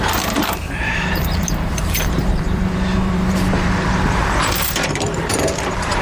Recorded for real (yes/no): no